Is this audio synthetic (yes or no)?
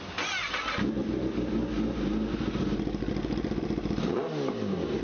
no